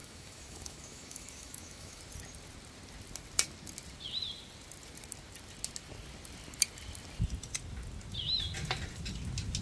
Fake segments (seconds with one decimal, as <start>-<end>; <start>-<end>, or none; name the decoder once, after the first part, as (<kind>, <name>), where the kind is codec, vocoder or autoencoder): 0.0-2.0 (autoencoder, DAC-VAE)